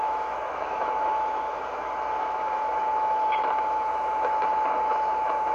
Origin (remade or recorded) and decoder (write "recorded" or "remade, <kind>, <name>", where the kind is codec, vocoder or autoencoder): remade, autoencoder, DAC-VAE